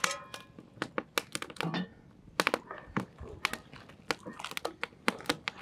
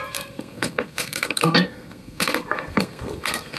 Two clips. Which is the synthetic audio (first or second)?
second